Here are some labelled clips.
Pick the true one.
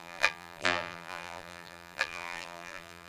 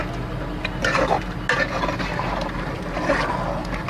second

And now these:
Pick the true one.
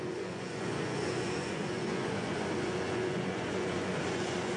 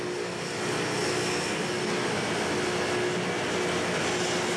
second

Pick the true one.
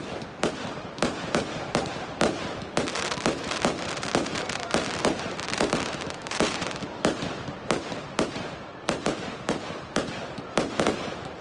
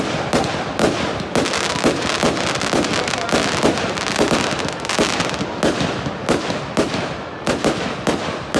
second